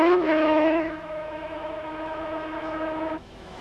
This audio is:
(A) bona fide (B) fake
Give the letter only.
B